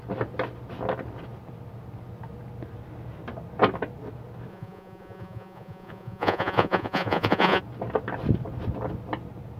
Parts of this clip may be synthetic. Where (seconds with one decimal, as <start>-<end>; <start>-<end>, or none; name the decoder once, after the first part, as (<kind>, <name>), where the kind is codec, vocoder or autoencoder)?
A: 4.5-7.6 (vocoder, Vocos)